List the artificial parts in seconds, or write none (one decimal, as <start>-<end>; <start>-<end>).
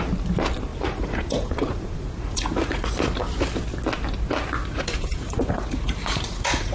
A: 0.7-2.9; 4.7-6.7